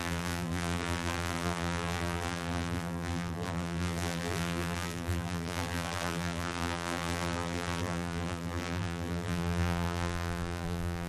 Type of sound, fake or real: fake